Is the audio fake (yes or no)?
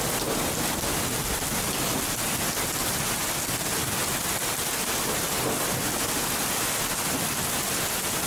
no